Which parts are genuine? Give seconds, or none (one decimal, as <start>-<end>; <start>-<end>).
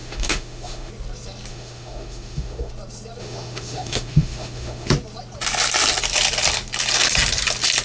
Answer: 0.9-1.5; 2.7-3.2; 4.9-7.8